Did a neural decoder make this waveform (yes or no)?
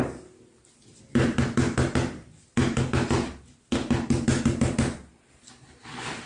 no